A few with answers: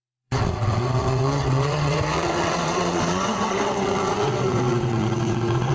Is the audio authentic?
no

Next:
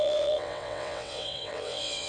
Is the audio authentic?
no